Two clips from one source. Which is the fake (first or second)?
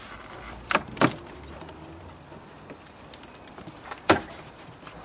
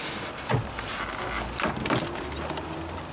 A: first